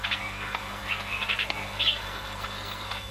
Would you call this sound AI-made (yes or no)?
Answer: yes